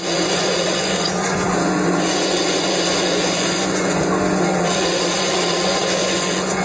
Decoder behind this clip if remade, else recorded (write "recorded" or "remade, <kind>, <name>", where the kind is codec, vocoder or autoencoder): remade, vocoder, Vocos